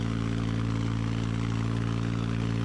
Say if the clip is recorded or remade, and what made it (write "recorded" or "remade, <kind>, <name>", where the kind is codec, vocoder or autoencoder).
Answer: recorded